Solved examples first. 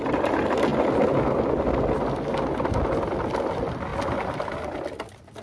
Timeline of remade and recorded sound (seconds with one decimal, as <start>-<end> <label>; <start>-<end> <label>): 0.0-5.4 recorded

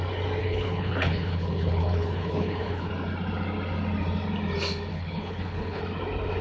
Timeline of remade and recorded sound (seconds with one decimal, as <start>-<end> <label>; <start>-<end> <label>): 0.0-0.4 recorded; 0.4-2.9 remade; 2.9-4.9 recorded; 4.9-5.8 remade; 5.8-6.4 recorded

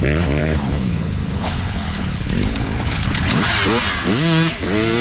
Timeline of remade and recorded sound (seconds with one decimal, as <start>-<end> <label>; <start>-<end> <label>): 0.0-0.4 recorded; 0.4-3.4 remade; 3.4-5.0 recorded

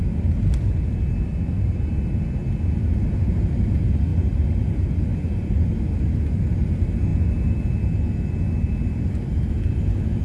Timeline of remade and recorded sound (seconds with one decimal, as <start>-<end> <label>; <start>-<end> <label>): 0.0-10.2 recorded

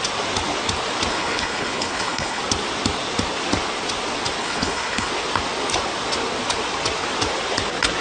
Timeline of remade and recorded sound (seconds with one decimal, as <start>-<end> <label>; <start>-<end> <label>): 0.0-1.1 recorded; 1.1-2.4 remade; 2.4-4.4 recorded; 4.4-5.1 remade; 5.1-8.0 recorded

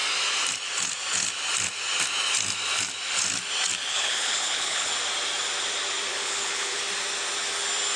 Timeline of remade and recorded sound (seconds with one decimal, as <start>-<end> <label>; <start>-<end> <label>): 0.0-3.9 recorded; 3.9-4.9 remade; 4.9-6.1 recorded; 6.1-6.8 remade; 6.8-8.0 recorded

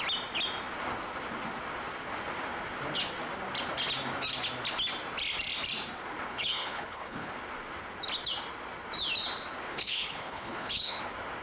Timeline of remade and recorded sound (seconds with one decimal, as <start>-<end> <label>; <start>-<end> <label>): 0.0-6.3 recorded; 6.3-7.3 remade; 7.3-9.7 recorded; 9.7-11.0 remade; 11.0-11.4 recorded